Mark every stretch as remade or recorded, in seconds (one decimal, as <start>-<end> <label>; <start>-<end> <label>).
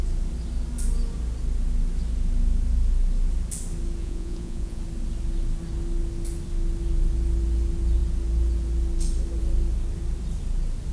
0.0-4.0 recorded; 4.0-4.8 remade; 4.8-10.9 recorded